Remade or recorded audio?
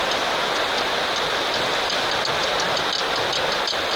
recorded